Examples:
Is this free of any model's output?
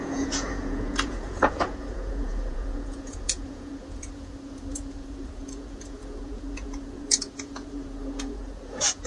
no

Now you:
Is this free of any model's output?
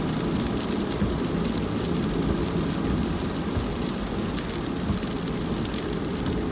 yes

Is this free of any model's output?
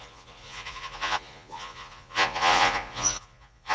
no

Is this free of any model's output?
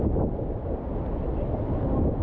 yes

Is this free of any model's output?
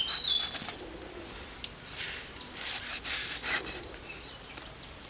yes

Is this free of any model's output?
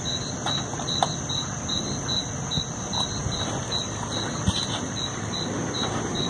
yes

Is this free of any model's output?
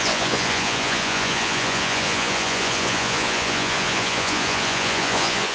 no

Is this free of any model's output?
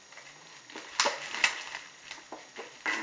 yes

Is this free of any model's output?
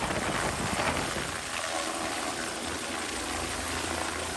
yes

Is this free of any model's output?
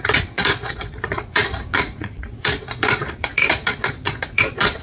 no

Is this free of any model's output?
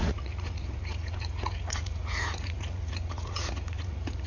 no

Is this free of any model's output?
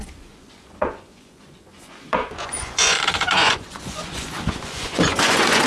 no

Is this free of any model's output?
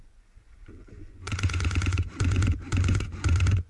no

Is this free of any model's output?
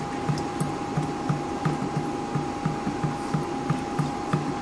yes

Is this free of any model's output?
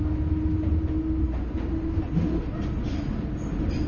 yes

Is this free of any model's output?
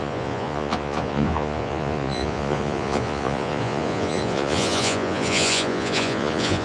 no